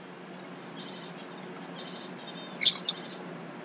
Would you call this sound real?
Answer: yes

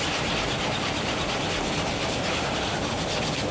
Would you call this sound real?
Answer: yes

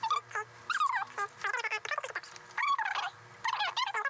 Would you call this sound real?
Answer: yes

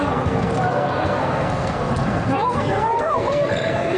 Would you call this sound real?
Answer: no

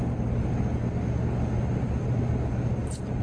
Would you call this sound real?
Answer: yes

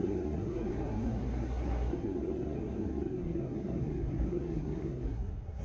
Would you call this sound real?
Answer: no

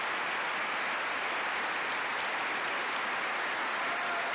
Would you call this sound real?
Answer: yes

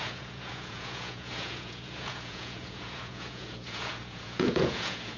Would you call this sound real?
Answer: no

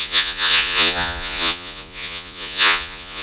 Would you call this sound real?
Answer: no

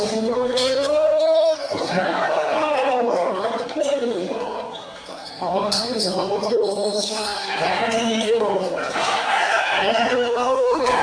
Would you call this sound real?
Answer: no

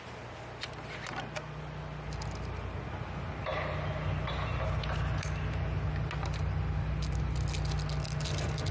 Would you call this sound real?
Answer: yes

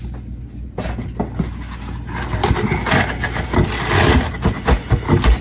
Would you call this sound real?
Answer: yes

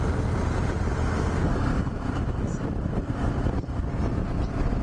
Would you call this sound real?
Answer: yes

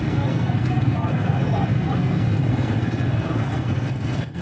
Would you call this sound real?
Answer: no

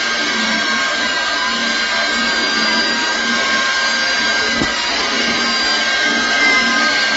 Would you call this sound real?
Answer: yes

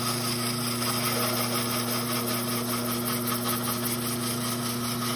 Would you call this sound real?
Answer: yes